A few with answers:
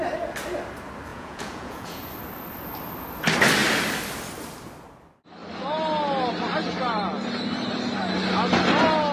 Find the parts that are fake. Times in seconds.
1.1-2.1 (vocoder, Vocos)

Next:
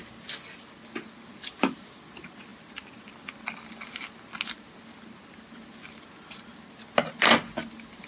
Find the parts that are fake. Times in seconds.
none